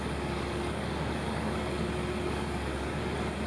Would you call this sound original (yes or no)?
no